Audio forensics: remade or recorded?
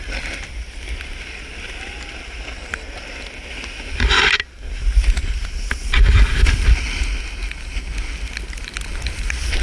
recorded